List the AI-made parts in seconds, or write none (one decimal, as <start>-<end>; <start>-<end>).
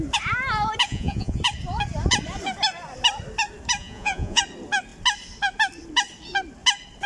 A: 0.9-1.4; 3.8-4.4